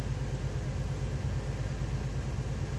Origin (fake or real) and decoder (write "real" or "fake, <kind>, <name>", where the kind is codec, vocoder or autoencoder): real